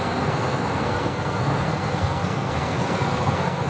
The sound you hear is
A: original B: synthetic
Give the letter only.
B